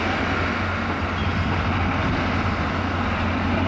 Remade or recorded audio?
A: recorded